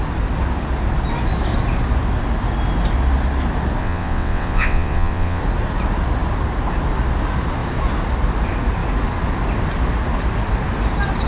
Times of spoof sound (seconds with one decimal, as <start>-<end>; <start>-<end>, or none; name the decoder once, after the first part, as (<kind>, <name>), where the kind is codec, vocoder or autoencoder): 3.8-5.4 (vocoder, WaveNeXt)